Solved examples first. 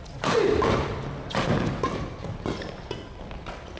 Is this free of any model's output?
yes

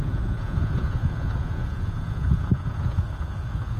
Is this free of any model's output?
no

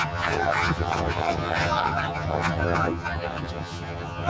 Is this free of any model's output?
no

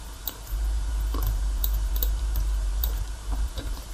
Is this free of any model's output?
no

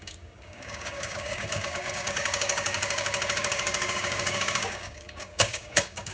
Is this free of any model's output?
no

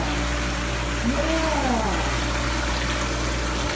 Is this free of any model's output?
yes